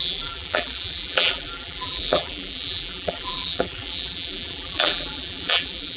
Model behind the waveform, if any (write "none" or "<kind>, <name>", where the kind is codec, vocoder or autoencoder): vocoder, BigVGAN v2